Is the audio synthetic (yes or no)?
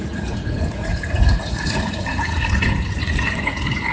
yes